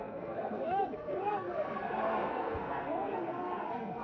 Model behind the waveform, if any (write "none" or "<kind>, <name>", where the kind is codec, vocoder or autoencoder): codec, SNAC